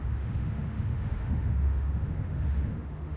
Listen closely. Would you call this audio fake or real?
fake